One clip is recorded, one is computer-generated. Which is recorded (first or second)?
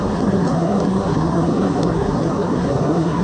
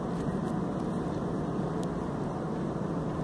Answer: second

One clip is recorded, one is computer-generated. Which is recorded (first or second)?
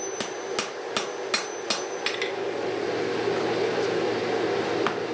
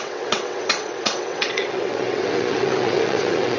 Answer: first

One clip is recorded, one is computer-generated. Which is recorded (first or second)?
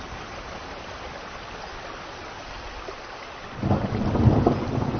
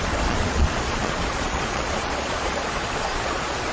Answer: first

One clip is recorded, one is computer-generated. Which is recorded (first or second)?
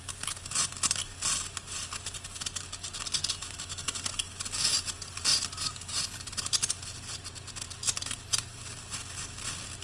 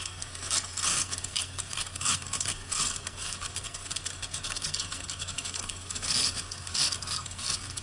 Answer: first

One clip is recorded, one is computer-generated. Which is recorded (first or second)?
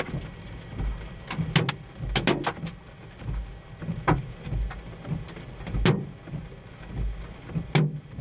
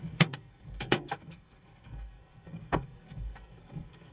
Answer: first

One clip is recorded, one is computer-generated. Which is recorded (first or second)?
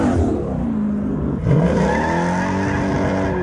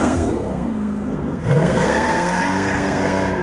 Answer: first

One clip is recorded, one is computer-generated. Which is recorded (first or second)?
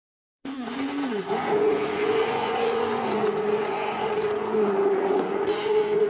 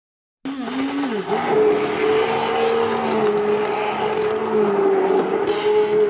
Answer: second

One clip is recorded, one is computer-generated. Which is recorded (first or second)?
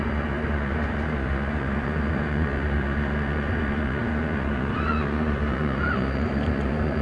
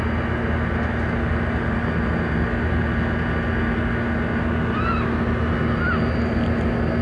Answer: second